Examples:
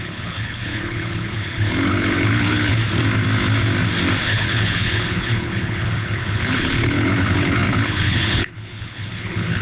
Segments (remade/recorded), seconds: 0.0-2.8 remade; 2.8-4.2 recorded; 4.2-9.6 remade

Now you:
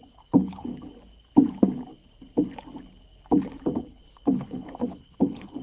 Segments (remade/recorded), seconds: 0.0-0.7 remade; 0.7-3.8 recorded; 3.8-5.6 remade

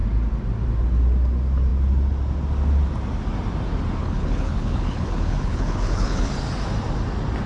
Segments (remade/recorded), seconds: 0.0-4.0 recorded; 4.0-6.3 remade; 6.3-7.5 recorded

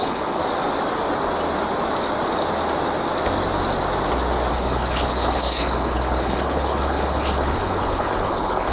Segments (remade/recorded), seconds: 0.0-0.4 remade; 0.4-4.5 recorded; 4.5-8.7 remade

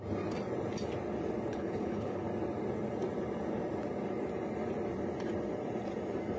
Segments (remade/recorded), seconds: 0.0-1.5 recorded; 1.5-2.2 remade; 2.2-6.4 recorded